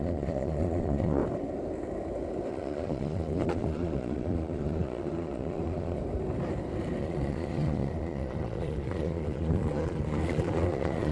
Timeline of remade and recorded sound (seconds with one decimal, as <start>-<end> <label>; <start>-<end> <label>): 0.0-1.2 remade; 1.2-2.5 recorded; 2.5-6.0 remade; 6.0-7.0 recorded; 7.0-11.1 remade